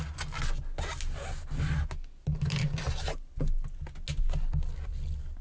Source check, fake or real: real